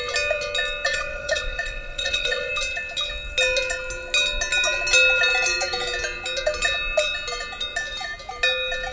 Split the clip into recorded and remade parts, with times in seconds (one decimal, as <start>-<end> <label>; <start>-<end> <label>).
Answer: 0.0-0.9 recorded; 0.9-2.5 remade; 2.5-8.9 recorded